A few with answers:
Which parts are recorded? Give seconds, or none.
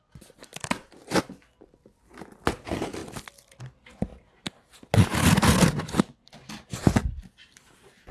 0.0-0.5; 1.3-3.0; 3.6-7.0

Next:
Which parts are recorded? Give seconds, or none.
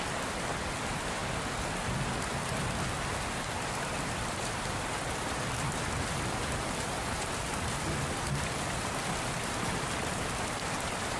1.2-4.2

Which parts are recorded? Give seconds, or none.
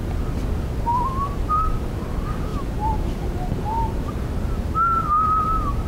0.0-2.5; 3.3-5.9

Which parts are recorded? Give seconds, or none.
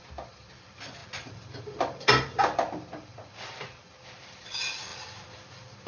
0.5-5.9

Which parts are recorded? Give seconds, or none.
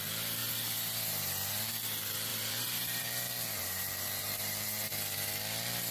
0.0-0.4; 1.7-2.3; 3.0-3.6; 4.9-5.9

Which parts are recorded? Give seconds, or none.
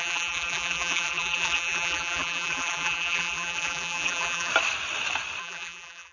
4.5-5.4